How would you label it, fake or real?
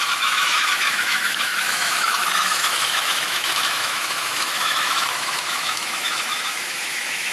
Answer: fake